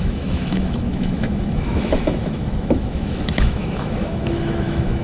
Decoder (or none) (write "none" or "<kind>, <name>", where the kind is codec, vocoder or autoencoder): autoencoder, DAC-VAE